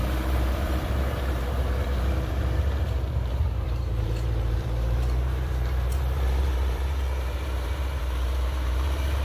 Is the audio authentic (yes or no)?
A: no